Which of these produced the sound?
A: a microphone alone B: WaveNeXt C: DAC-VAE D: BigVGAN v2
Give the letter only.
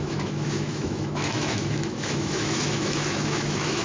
C